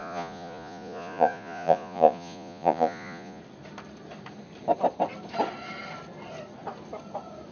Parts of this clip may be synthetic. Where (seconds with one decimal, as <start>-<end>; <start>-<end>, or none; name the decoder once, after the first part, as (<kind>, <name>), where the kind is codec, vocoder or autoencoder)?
0.0-3.4 (vocoder, Vocos)